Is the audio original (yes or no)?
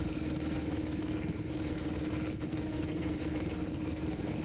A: no